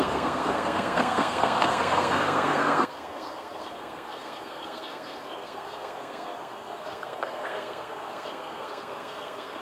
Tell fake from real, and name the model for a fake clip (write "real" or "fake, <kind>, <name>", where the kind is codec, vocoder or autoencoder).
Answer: fake, codec, SNAC